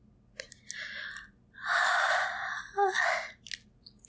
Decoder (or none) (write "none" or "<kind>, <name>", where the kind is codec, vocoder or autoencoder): none